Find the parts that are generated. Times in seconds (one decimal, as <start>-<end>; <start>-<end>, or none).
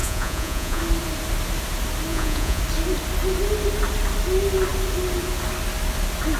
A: 0.0-0.8; 2.1-2.6